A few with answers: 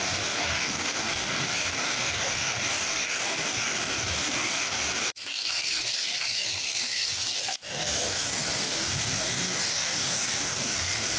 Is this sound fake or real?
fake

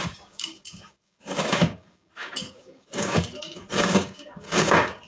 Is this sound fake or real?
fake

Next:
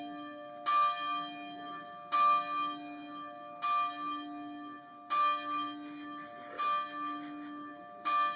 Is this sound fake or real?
real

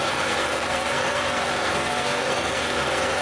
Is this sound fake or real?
fake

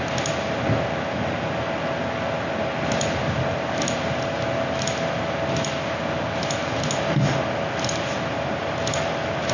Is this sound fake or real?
real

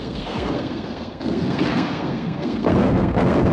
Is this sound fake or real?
fake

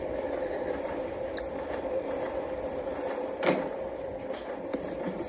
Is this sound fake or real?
fake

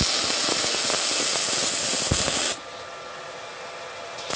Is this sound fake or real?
real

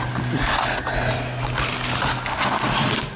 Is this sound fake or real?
real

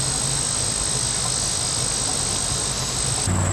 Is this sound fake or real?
real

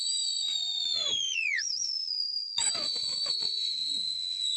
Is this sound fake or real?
fake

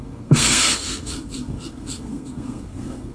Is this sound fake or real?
fake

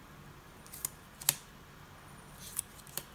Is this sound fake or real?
real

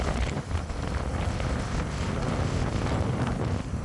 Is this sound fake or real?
real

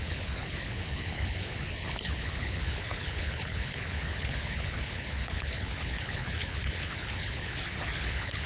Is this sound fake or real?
fake